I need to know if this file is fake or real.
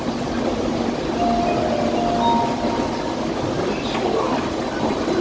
real